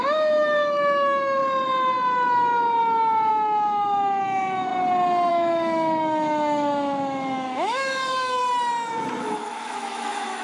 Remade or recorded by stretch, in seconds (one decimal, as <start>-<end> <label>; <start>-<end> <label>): 0.0-1.4 remade; 1.4-3.3 recorded; 3.3-4.7 remade; 4.7-5.3 recorded; 5.3-8.4 remade; 8.4-9.2 recorded; 9.2-10.4 remade